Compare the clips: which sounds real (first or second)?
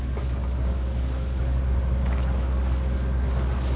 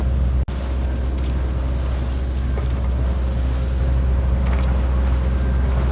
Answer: second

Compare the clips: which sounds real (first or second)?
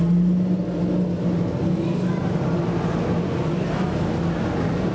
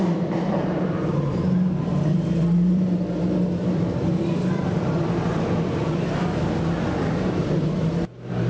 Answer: first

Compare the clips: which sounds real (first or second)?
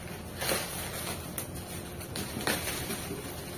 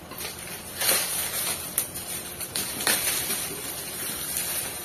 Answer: first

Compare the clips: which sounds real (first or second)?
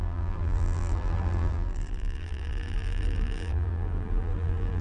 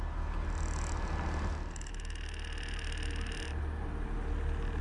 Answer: second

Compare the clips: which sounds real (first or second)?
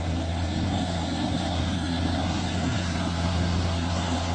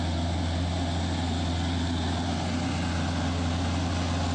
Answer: second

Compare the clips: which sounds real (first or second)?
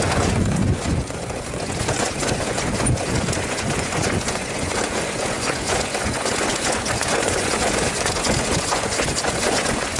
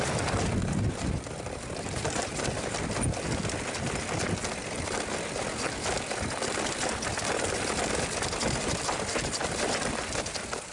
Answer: second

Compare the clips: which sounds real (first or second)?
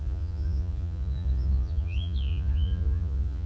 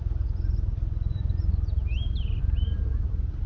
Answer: second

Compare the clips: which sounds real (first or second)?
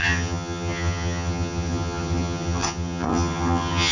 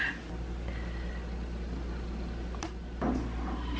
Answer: second